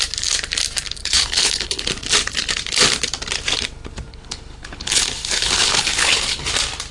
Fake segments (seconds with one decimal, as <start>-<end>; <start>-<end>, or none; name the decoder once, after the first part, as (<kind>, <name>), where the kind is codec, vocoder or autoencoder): 1.0-1.9 (codec, HILCodec); 4.1-6.5